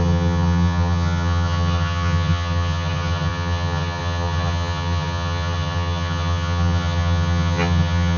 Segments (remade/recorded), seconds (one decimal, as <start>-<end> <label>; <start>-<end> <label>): 0.0-8.2 remade